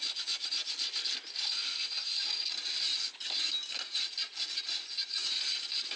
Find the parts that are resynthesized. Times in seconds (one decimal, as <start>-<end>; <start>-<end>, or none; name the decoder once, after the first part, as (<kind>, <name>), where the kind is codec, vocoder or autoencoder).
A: none

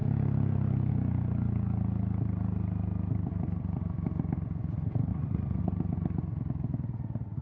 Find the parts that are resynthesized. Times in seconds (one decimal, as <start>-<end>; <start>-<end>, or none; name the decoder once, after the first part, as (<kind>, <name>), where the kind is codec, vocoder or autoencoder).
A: 5.1-5.6 (vocoder, Vocos)

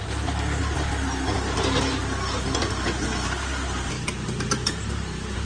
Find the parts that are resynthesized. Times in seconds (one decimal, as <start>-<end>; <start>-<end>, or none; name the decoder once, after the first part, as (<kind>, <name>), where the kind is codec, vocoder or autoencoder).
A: none

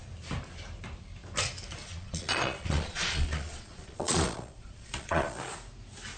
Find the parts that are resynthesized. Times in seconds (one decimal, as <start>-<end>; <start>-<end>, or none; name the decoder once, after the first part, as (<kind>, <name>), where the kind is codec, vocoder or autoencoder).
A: 1.8-5.5 (vocoder, Vocos)

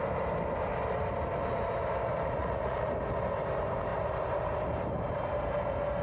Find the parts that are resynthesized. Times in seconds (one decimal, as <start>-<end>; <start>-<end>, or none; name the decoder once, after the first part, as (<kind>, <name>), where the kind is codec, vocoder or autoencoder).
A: 2.4-2.9 (vocoder, Vocos)

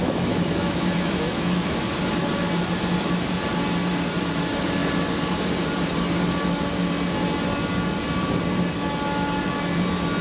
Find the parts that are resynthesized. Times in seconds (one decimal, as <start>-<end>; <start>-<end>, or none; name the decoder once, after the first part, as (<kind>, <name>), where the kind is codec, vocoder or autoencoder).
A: 0.0-1.8 (autoencoder, DAC-VAE)

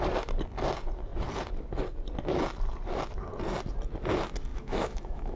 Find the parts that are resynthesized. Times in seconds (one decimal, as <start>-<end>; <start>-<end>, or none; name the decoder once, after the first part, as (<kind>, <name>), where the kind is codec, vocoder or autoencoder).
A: 4.5-5.4 (autoencoder, DAC-VAE)

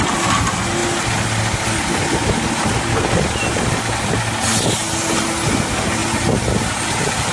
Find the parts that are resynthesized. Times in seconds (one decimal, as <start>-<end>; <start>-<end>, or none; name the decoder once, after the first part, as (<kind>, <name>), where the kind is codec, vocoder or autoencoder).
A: none